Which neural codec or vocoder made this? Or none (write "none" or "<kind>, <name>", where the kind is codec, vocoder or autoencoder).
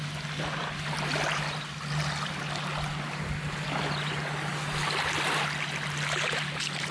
none